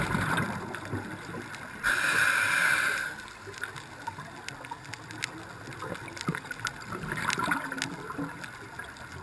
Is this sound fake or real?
real